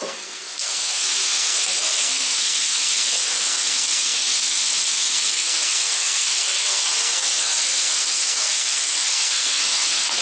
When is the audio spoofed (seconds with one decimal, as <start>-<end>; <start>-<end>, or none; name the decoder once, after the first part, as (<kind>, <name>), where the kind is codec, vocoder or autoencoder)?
0.0-10.2 (codec, SNAC)